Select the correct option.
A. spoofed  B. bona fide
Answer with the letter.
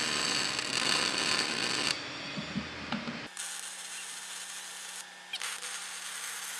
B